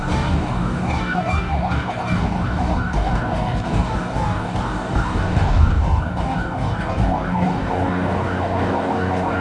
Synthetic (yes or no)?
yes